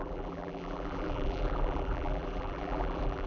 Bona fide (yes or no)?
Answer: no